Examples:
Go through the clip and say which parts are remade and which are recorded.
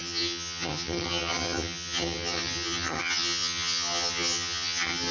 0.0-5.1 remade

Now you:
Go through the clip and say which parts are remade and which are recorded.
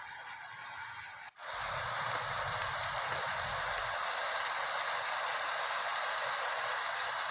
0.0-7.3 recorded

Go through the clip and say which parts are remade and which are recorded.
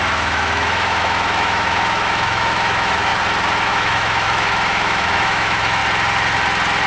0.0-3.1 remade; 3.1-3.7 recorded; 3.7-5.8 remade; 5.8-6.9 recorded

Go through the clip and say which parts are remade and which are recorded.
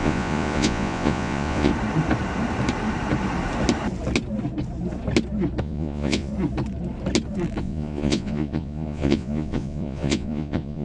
0.0-1.7 remade; 1.7-5.6 recorded; 5.6-6.3 remade; 6.3-7.6 recorded; 7.6-10.8 remade